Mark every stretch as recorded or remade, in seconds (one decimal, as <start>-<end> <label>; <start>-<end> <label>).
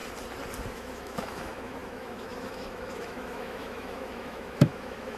0.0-0.7 recorded; 0.7-5.2 remade